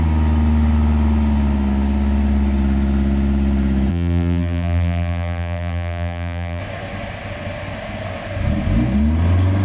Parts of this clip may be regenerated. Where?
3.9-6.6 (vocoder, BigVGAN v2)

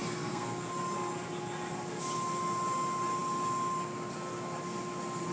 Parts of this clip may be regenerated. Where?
0.0-0.7 (codec, SNAC)

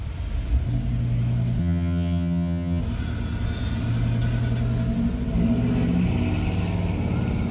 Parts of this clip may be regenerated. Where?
1.6-2.8 (vocoder, HiFi-GAN)

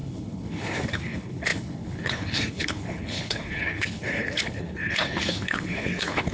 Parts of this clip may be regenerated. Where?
0.0-6.3 (codec, HILCodec)

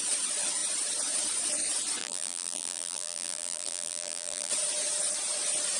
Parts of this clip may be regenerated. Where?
2.0-4.5 (vocoder, BigVGAN v2)

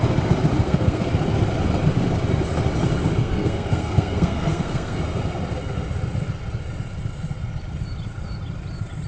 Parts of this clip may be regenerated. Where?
0.6-1.1 (codec, SNAC); 3.2-5.0

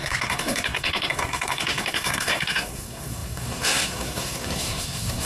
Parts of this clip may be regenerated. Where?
0.0-5.3 (codec, SNAC)

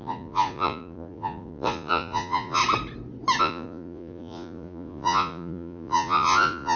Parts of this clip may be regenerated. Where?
0.0-2.6 (vocoder, Vocos); 3.4-6.8